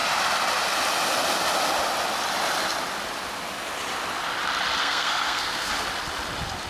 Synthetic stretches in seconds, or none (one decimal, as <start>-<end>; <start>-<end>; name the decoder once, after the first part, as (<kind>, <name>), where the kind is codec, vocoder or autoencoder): 4.8-5.7 (codec, SNAC)